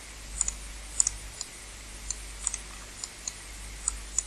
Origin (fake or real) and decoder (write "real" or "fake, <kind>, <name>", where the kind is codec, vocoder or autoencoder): real